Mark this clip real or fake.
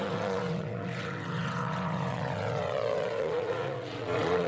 fake